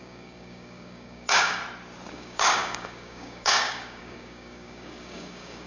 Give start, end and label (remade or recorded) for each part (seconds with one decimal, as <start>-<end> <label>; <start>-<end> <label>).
0.0-1.6 remade; 1.6-2.1 recorded; 2.1-5.7 remade